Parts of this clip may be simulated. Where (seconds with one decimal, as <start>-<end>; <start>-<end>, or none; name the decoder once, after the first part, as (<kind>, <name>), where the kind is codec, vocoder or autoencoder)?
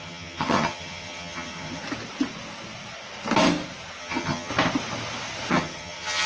0.0-1.8 (vocoder, HiFi-GAN); 4.0-4.5; 5.5-6.3